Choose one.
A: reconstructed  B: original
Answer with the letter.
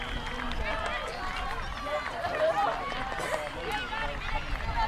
B